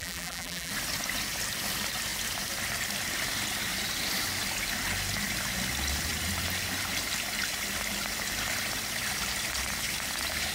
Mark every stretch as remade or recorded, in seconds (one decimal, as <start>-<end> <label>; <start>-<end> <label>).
0.0-0.7 remade; 0.7-10.5 recorded